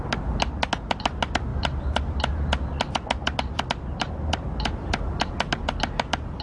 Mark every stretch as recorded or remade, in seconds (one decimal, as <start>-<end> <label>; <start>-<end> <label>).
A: 0.0-6.4 recorded